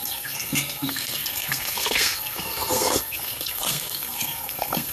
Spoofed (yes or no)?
yes